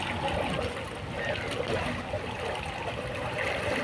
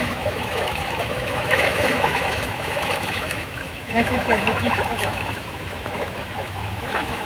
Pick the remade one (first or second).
second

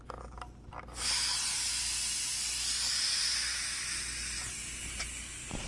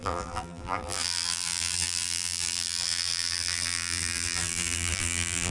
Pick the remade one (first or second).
second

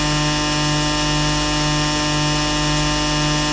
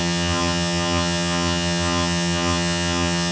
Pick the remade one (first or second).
second